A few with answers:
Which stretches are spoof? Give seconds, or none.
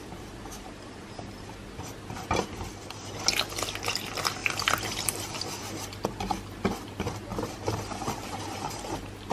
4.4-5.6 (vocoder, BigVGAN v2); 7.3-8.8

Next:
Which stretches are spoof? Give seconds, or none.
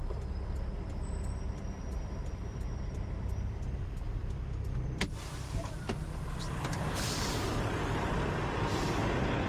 2.3-4.2 (vocoder, BigVGAN v2)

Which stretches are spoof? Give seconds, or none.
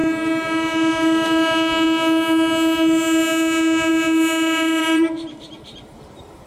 4.8-6.5 (vocoder, BigVGAN v2)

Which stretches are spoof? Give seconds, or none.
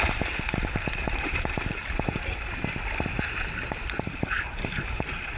0.0-1.8 (vocoder, BigVGAN v2); 4.4-5.4